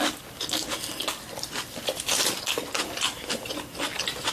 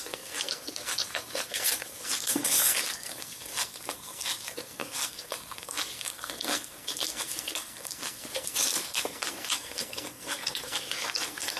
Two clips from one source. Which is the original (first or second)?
first